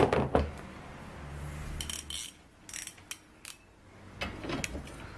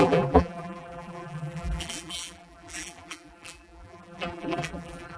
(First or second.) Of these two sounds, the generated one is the second